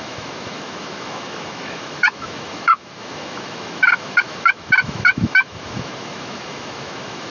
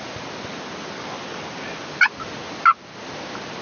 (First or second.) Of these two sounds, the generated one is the first